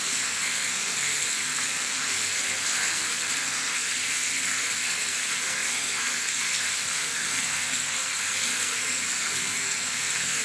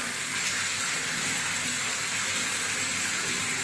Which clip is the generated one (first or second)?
first